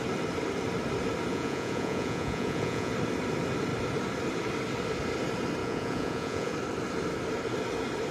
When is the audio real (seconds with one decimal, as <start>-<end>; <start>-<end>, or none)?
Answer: 0.0-1.3; 2.9-5.6; 6.5-8.1